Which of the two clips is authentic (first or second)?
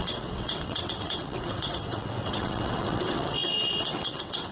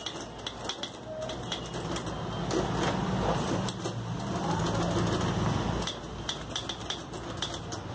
second